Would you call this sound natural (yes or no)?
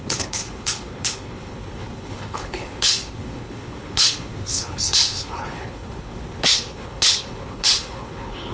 no